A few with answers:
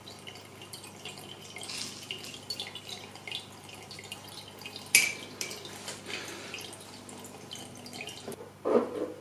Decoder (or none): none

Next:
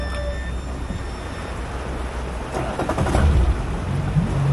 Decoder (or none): none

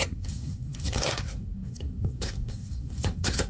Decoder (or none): codec, SNAC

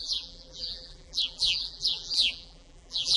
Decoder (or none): vocoder, BigVGAN v2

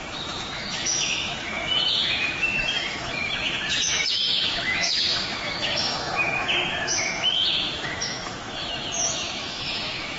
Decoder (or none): autoencoder, DAC-VAE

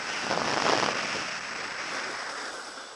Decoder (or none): none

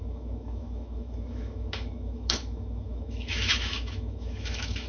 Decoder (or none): autoencoder, DAC-VAE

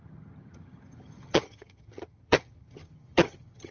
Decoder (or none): vocoder, HiFi-GAN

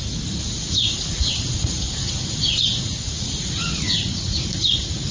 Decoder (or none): vocoder, Vocos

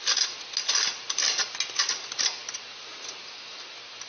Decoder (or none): none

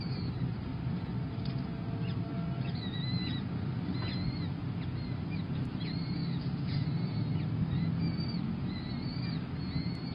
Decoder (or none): none